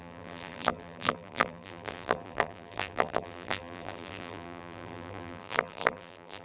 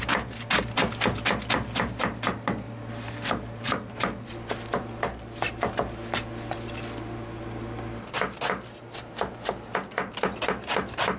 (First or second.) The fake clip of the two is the first